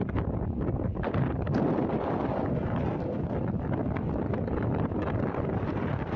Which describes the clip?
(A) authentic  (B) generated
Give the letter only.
A